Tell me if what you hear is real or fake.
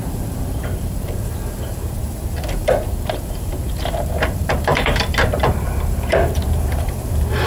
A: fake